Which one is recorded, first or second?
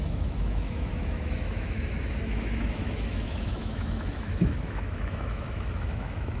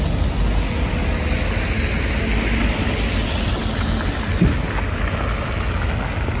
second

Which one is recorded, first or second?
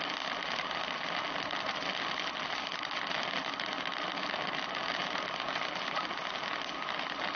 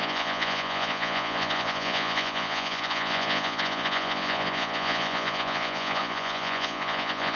first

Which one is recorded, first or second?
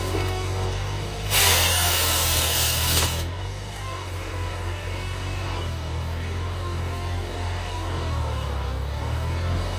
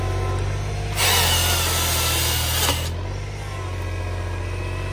second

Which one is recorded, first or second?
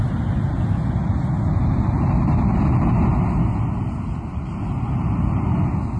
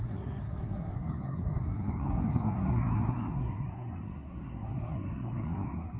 first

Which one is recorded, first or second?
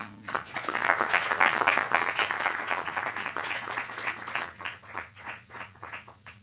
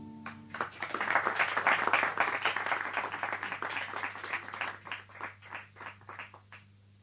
second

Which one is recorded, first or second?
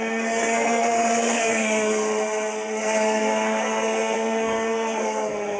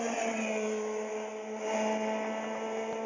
second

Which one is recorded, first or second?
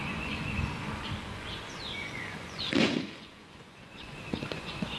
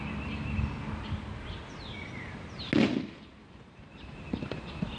second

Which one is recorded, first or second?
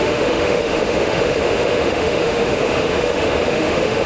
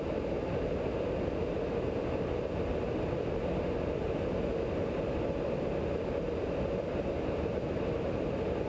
second